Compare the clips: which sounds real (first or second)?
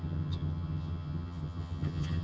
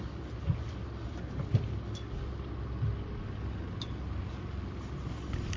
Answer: second